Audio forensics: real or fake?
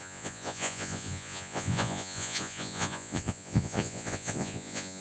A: fake